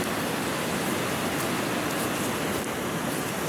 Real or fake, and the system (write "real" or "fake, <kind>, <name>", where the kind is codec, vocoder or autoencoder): real